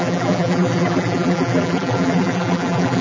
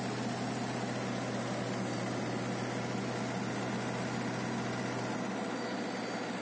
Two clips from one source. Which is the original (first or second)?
second